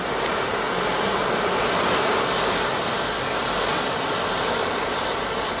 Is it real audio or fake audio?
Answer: real